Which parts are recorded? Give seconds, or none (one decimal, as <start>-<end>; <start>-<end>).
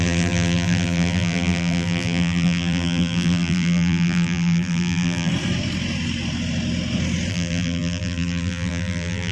5.3-7.3